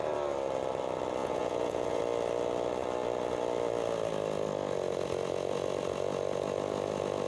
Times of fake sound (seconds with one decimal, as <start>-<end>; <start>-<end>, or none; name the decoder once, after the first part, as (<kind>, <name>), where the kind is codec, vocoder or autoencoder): 1.2-2.0 (vocoder, Vocos)